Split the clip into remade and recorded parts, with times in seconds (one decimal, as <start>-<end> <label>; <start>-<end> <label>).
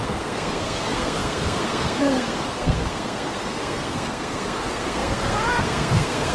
0.0-6.3 remade